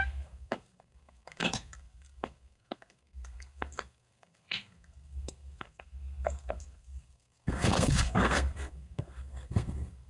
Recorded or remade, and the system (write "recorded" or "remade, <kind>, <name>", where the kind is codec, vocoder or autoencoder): remade, codec, SNAC